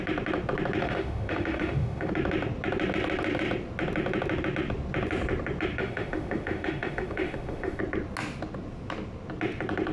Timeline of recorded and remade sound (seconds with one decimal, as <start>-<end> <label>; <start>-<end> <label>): 0.0-0.8 recorded; 0.8-2.1 remade; 2.1-5.8 recorded; 5.8-7.8 remade; 7.8-9.9 recorded